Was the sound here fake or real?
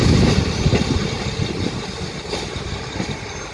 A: real